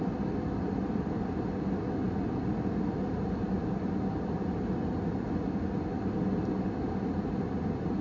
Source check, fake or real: real